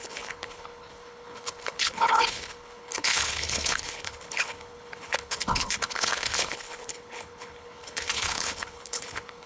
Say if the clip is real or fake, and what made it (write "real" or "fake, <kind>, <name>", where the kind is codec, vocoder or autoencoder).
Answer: fake, codec, HILCodec